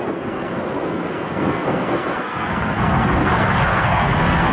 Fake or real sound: fake